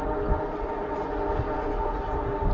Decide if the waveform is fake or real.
real